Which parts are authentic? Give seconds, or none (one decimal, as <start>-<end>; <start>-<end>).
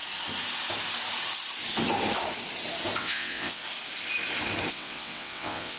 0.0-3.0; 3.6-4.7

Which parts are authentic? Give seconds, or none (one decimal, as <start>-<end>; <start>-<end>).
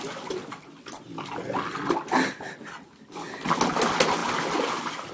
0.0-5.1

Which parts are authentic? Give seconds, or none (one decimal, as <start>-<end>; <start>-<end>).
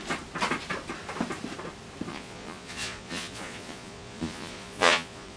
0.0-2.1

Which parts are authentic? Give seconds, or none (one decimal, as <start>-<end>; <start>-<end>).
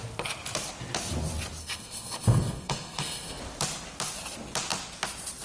0.0-1.6; 3.4-5.4